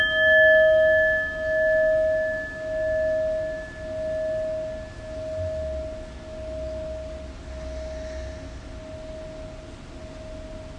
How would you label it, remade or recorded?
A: recorded